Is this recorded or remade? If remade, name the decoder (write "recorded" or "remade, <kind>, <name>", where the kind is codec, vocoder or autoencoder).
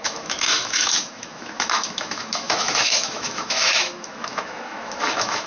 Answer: remade, autoencoder, DAC-VAE